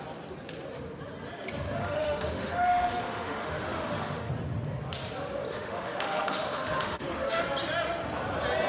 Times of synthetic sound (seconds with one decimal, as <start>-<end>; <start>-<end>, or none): 1.8-4.3; 5.5-7.4

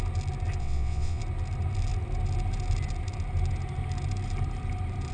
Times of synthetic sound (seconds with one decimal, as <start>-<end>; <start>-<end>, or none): 0.6-1.2

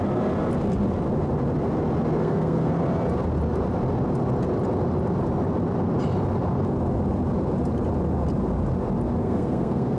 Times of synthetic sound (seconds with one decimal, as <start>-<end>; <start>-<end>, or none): 2.2-2.7; 9.2-10.0

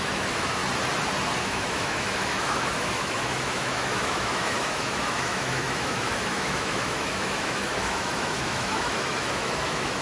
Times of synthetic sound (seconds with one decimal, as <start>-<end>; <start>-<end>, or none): 0.0-0.6; 1.4-10.0

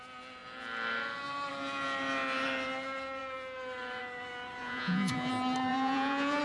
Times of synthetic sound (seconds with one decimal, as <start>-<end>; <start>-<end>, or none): 4.6-5.3; 5.7-6.4

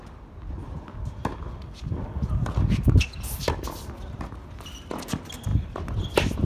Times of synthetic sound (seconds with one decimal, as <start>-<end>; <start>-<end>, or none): none

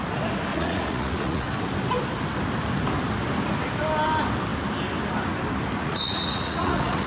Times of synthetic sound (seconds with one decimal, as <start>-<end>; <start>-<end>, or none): 0.5-1.6; 5.8-7.1

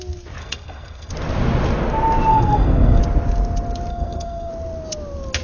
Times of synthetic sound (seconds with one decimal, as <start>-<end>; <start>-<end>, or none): 0.4-1.1; 2.3-3.0; 3.9-4.5